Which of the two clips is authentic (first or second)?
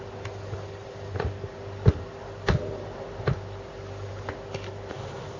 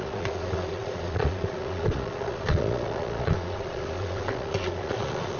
first